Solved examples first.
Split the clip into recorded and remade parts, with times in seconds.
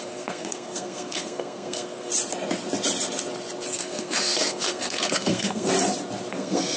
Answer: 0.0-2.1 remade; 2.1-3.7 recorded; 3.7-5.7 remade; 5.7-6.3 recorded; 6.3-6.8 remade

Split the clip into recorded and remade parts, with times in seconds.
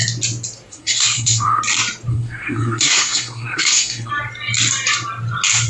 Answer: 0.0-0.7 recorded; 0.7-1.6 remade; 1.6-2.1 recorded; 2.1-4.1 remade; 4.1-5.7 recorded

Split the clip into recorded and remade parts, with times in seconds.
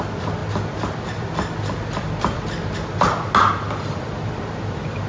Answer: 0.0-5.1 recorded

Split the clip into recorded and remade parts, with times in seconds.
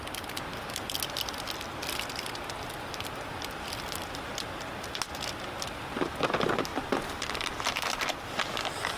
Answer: 0.0-9.0 recorded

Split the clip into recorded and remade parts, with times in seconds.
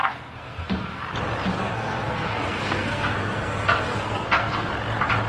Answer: 0.0-1.0 remade; 1.0-1.5 recorded; 1.5-4.7 remade; 4.7-5.3 recorded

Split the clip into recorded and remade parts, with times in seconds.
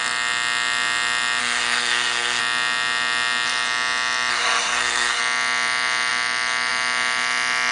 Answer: 0.0-1.4 recorded; 1.4-2.4 remade; 2.4-4.3 recorded; 4.3-5.2 remade; 5.2-7.7 recorded